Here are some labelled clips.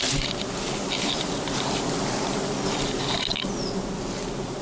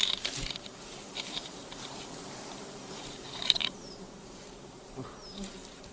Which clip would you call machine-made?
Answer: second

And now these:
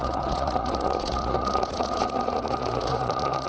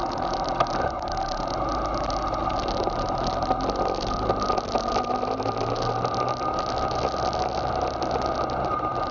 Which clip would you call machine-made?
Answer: first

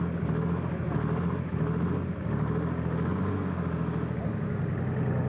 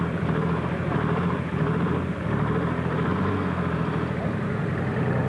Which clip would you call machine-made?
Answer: second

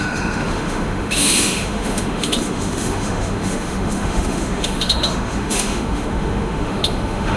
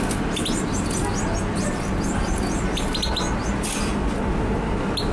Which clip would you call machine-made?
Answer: first